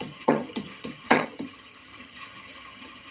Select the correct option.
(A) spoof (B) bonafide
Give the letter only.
A